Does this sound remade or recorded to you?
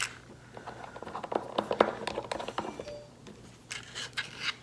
recorded